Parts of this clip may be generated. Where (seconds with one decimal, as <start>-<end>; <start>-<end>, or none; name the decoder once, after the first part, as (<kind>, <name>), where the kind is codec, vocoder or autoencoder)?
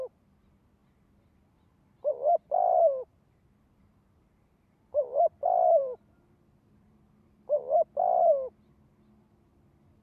3.1-7.9 (vocoder, BigVGAN v2)